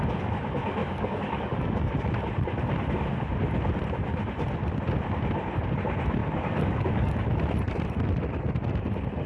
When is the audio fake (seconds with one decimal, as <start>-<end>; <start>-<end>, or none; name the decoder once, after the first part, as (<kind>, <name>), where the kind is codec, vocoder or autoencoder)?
0.8-1.9 (codec, DAC); 6.2-7.2